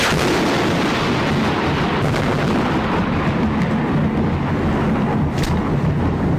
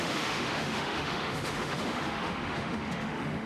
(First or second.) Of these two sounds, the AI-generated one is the second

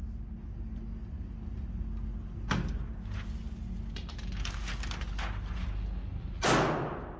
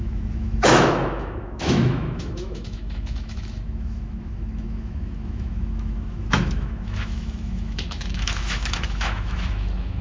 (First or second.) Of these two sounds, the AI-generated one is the second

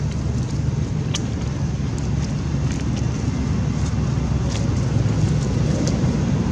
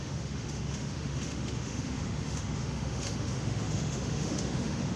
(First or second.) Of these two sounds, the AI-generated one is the second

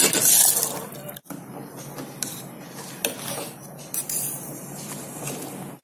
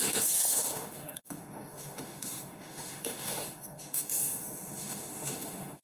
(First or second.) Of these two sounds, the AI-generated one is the second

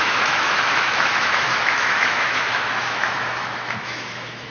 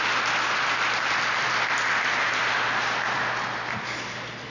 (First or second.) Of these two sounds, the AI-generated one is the first